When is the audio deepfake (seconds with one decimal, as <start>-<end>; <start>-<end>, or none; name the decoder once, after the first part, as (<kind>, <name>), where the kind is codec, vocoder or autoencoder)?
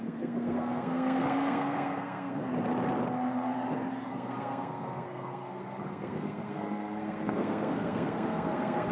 0.0-2.4 (codec, SNAC); 4.1-8.9